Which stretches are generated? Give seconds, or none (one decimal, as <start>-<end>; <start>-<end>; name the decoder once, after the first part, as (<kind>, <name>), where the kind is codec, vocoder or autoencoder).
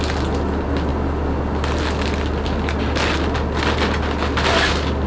none